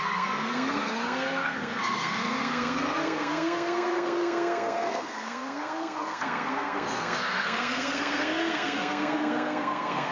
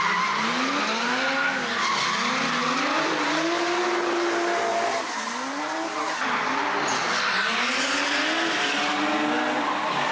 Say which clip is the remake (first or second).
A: first